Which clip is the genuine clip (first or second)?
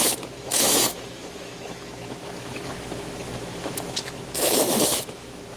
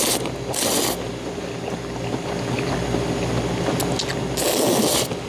second